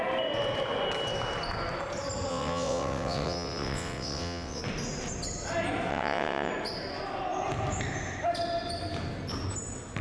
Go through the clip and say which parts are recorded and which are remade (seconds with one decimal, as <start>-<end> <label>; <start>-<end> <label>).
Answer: 0.0-2.3 recorded; 2.3-4.6 remade; 4.6-5.9 recorded; 5.9-6.5 remade; 6.5-10.0 recorded